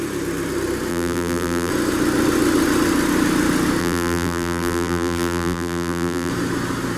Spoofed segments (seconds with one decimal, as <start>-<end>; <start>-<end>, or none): 0.9-1.7; 3.8-6.3